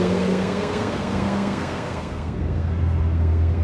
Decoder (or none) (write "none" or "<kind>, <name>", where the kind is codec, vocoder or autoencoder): codec, SNAC